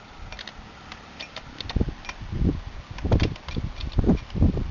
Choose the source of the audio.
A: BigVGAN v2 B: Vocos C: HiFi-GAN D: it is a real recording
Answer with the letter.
D